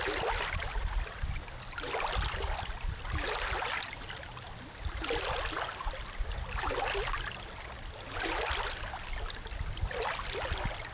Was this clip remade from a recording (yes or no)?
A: no